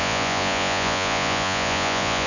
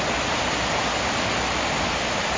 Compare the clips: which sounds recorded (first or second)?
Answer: second